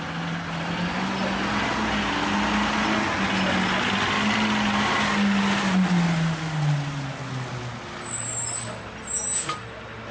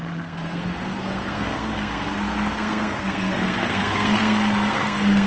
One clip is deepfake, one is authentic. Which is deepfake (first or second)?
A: second